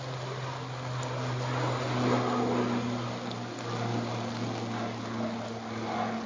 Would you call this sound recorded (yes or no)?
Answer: yes